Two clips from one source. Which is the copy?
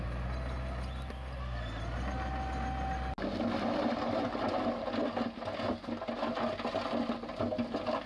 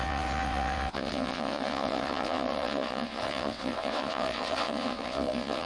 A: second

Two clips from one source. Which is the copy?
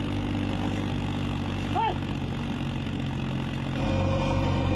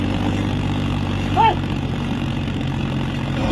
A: second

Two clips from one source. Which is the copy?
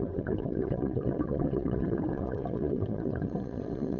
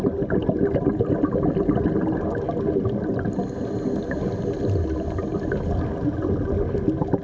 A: first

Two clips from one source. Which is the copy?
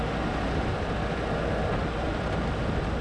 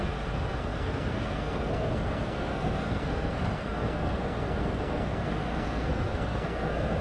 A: second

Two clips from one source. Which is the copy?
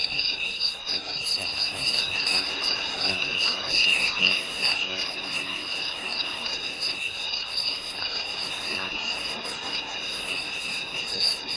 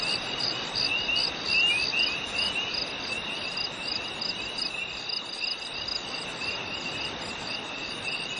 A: first